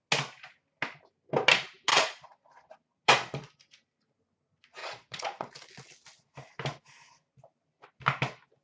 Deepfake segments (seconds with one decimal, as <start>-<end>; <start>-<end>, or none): 1.9-2.7; 4.8-5.5